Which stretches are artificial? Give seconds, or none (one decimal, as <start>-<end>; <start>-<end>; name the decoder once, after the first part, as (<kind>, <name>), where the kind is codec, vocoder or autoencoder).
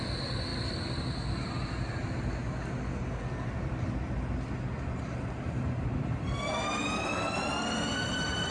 none